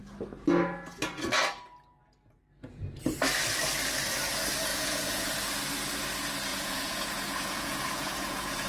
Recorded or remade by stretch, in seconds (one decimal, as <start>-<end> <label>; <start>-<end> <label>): 0.0-4.7 recorded; 4.7-5.3 remade; 5.3-6.5 recorded; 6.5-8.7 remade